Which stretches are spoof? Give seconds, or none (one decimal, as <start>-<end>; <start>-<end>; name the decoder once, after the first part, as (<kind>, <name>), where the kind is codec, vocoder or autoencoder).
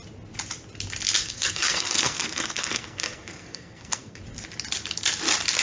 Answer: 1.2-4.2 (codec, SNAC)